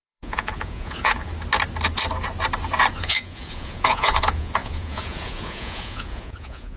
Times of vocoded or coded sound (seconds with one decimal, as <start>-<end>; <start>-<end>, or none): 0.0-1.3; 3.0-6.8